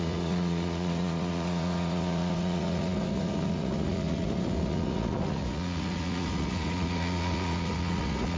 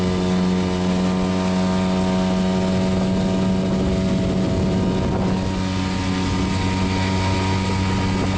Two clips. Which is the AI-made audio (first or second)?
first